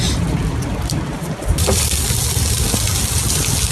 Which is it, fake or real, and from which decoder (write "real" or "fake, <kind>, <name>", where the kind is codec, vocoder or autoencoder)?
real